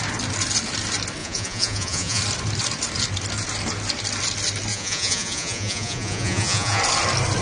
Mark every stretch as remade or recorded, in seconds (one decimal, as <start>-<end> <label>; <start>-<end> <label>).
0.0-1.2 recorded; 1.2-2.2 remade; 2.2-4.7 recorded; 4.7-6.8 remade; 6.8-7.4 recorded